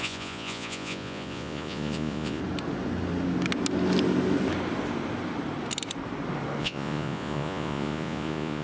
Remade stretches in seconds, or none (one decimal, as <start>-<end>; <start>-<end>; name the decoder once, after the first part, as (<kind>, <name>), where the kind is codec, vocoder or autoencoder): 0.0-2.4 (vocoder, Vocos); 6.6-8.6